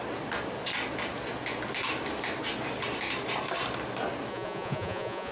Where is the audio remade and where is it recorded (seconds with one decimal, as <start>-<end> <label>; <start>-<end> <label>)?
0.0-4.3 recorded; 4.3-5.3 remade